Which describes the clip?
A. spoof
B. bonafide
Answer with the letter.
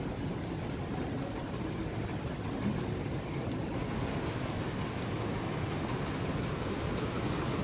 B